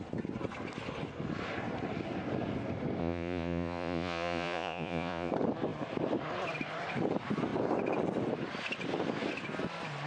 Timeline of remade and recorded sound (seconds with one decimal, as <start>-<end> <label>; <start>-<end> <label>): 0.0-3.0 recorded; 3.0-5.3 remade; 5.3-10.1 recorded